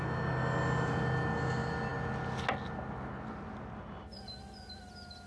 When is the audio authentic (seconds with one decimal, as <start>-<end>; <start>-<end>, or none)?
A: 0.0-5.3

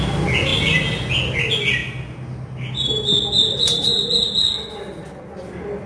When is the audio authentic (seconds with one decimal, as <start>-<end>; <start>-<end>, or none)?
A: 0.0-5.9

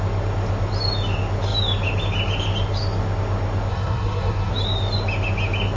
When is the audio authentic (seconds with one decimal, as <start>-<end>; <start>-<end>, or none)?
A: 0.0-3.7; 4.5-5.8

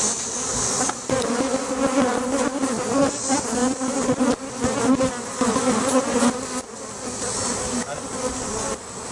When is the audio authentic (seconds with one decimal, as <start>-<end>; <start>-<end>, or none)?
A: 0.0-9.1

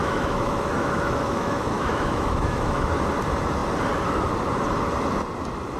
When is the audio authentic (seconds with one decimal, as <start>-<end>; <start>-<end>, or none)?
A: 2.8-5.8

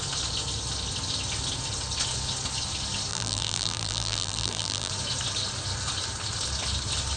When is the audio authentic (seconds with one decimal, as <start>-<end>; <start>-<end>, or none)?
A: 0.0-3.1; 4.9-7.2

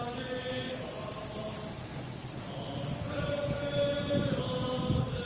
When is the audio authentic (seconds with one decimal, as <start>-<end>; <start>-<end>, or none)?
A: 0.0-5.3

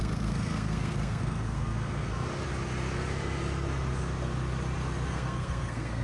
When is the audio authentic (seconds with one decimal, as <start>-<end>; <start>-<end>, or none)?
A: 2.1-5.1